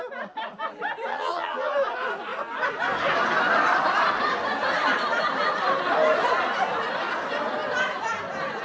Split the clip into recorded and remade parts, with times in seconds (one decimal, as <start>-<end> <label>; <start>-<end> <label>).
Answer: 0.0-1.1 recorded; 1.1-1.7 remade; 1.7-8.6 recorded